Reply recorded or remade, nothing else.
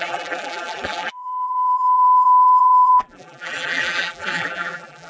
remade